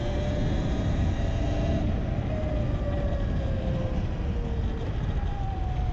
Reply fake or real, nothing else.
real